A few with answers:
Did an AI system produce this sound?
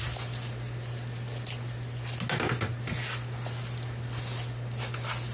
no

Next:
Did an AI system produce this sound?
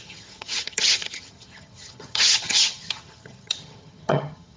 yes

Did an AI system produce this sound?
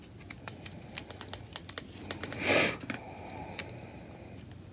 no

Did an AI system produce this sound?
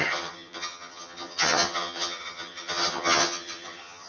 yes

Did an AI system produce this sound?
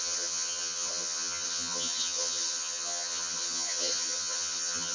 yes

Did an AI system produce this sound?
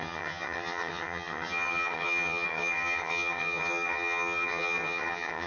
yes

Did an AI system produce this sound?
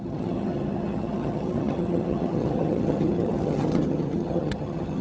yes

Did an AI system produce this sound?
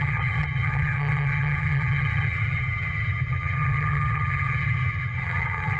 yes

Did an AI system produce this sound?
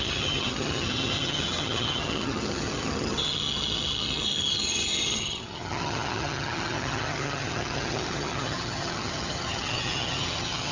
yes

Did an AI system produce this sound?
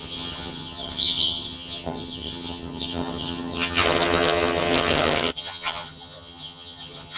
yes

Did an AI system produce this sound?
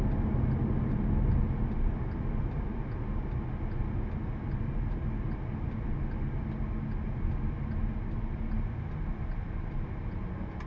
no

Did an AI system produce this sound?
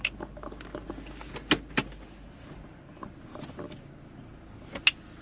no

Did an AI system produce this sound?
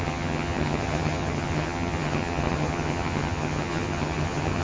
yes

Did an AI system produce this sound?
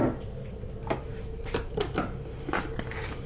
no